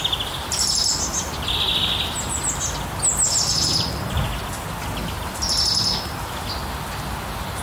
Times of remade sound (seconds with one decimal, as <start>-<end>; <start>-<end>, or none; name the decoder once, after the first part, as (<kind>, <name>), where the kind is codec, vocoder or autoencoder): none